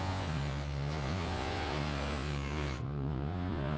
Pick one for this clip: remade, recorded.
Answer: remade